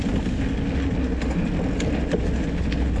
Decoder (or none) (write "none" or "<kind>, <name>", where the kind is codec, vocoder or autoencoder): none